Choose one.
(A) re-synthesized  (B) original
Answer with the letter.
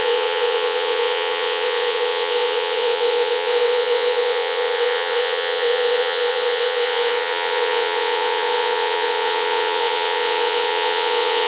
A